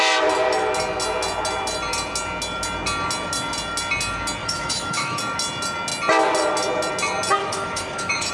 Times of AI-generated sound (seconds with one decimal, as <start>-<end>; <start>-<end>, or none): 4.4-5.2; 7.4-8.3